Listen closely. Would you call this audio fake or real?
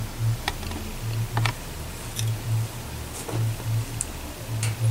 real